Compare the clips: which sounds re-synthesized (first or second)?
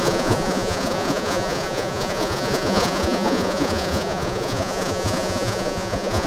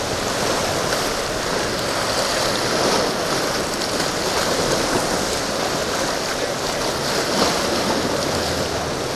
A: first